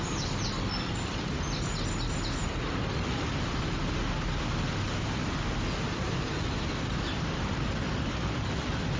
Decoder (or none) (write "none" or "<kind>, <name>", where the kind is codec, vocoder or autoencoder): none